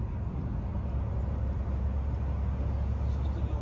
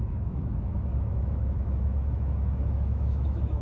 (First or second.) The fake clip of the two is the second